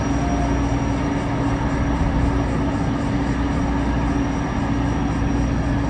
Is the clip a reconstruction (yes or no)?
no